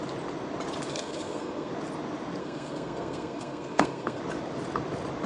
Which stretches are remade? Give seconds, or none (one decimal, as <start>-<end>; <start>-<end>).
0.9-1.7; 2.4-4.2